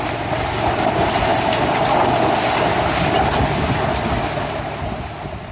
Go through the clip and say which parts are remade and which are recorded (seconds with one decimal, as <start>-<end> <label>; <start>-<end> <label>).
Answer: 0.0-5.5 remade